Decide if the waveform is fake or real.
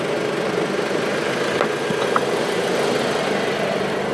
real